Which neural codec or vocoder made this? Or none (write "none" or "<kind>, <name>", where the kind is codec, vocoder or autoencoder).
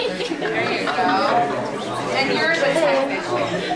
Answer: none